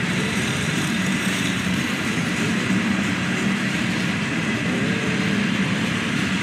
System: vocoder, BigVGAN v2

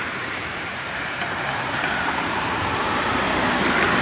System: vocoder, BigVGAN v2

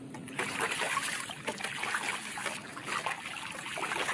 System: vocoder, BigVGAN v2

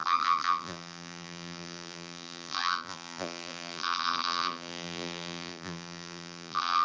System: vocoder, BigVGAN v2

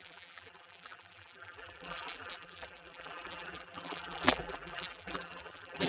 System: vocoder, BigVGAN v2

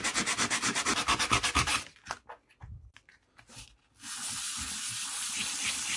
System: none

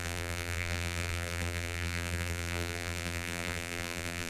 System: vocoder, BigVGAN v2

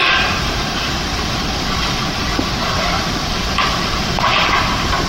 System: vocoder, BigVGAN v2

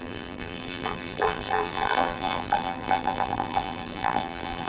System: vocoder, BigVGAN v2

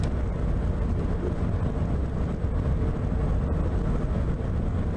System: none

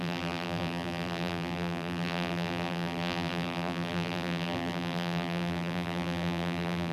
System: vocoder, BigVGAN v2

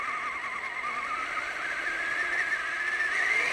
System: none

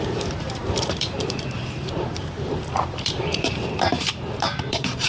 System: vocoder, BigVGAN v2